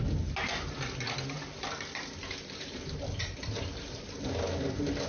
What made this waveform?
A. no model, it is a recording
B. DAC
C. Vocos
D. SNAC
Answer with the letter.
A